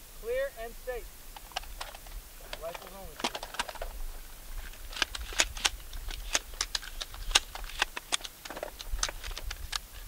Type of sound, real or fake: real